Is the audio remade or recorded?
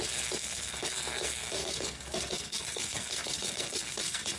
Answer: remade